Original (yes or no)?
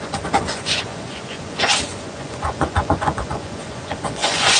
no